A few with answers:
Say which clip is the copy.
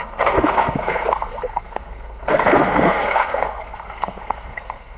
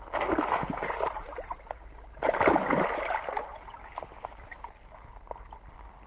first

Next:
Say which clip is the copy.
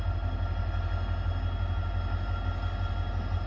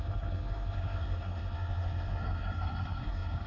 second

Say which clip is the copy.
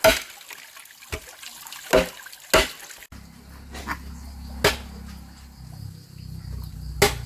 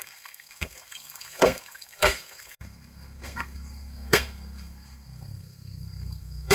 second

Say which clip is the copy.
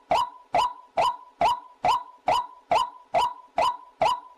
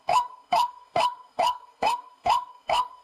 second